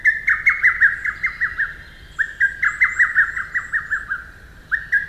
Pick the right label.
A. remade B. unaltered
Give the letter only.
B